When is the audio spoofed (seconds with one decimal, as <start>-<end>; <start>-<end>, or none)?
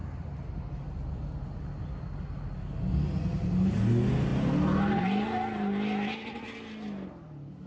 none